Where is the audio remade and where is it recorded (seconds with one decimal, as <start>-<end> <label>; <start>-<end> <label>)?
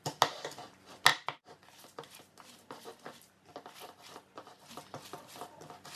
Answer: 0.0-1.1 recorded; 1.1-4.7 remade; 4.7-6.0 recorded